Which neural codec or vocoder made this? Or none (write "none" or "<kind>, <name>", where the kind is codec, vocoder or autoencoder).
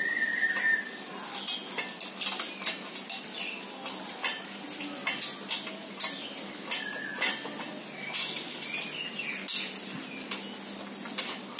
none